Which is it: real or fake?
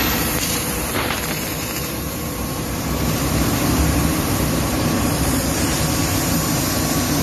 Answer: fake